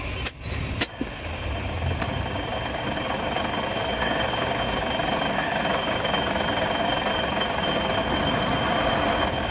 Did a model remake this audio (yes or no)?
no